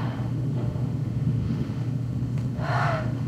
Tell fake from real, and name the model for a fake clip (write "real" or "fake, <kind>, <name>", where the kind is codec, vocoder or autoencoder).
fake, autoencoder, DAC-VAE